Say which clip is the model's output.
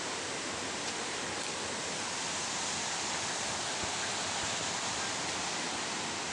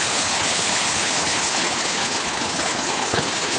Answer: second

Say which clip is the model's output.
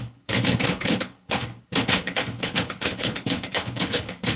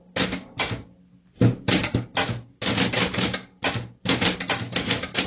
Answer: first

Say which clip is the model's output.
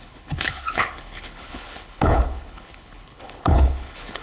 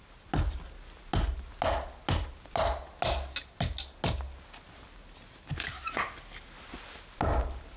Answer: first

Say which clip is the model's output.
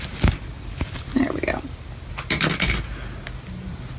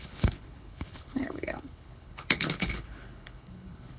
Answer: second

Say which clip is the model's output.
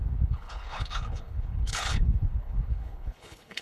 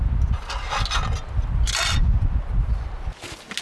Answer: first